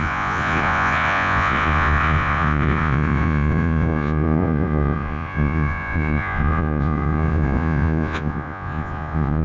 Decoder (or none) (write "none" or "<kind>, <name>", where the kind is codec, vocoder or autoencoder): vocoder, Vocos